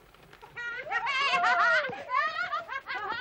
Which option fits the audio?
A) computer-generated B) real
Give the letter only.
B